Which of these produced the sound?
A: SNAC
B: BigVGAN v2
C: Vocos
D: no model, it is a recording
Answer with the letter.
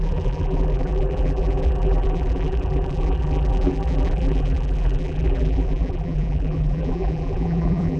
B